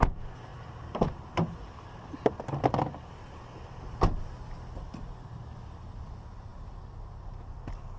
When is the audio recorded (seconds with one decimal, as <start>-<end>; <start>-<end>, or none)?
0.0-8.0